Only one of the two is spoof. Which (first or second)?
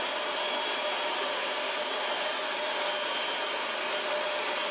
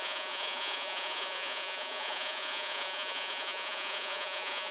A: second